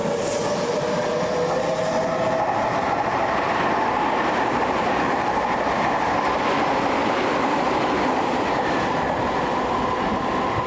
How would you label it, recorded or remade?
recorded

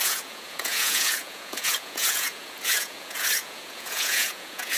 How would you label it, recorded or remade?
remade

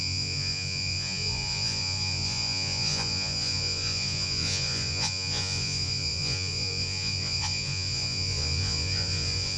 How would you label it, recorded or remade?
remade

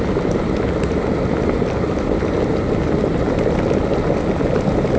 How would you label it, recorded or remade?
recorded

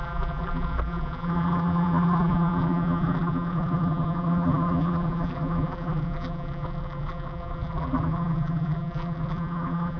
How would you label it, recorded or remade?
remade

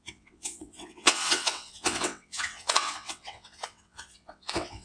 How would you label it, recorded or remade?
remade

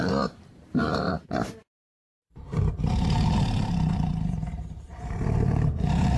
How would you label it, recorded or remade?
remade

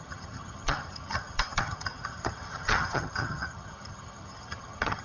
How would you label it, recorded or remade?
remade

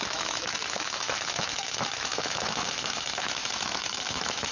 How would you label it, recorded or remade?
remade